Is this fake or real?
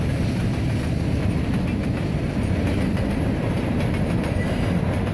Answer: real